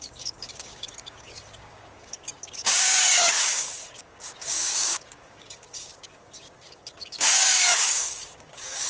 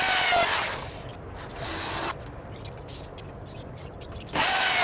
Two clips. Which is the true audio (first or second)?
second